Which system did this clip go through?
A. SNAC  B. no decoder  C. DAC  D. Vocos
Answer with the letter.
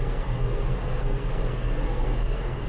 A